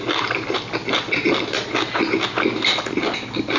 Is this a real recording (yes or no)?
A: yes